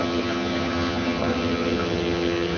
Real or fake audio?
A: fake